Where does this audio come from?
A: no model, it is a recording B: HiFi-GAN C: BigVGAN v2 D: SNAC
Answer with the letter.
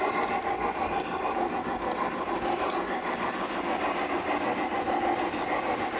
A